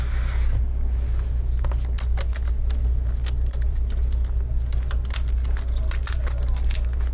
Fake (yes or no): no